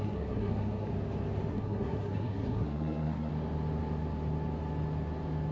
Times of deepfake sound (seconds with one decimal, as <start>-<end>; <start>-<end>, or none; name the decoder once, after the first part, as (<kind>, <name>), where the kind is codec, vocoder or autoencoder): 0.0-0.9 (codec, SNAC); 1.5-3.3